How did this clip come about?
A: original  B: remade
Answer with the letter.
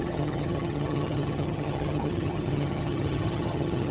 B